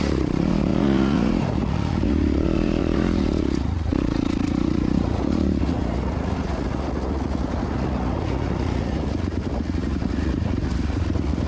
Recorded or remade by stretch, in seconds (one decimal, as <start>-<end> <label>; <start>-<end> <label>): 0.0-11.5 remade